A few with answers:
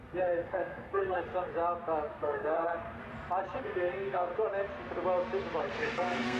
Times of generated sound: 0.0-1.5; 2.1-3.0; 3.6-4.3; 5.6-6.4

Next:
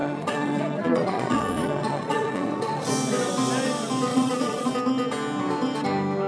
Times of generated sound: 0.0-2.9; 4.1-4.7

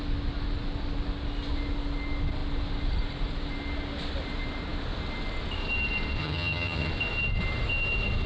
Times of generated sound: 6.2-6.9

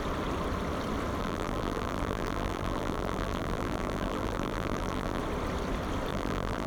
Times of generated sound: 1.2-5.2; 6.1-6.7

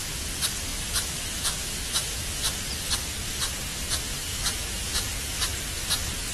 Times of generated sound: 0.7-2.5; 4.3-5.4

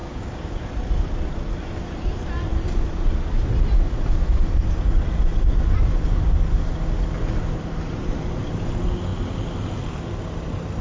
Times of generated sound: 0.0-0.6

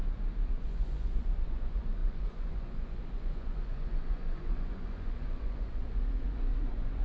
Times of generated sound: 0.5-7.0

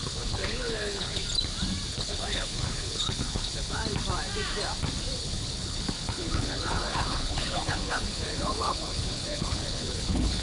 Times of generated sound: 0.0-1.2; 1.9-3.8; 5.2-10.4